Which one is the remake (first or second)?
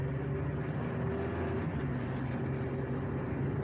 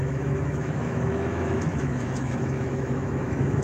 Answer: second